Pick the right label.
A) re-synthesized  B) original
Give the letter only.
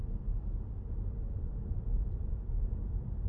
B